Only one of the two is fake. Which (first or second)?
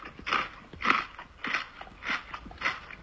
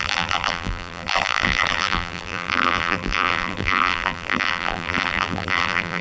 second